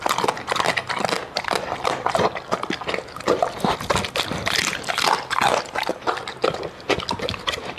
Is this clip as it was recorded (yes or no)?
yes